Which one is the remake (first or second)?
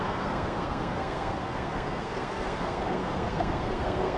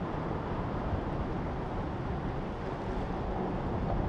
first